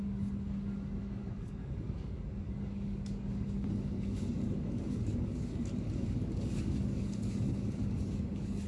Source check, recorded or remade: remade